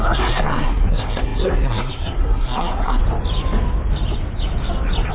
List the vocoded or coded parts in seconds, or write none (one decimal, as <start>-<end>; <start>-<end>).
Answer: 0.0-3.0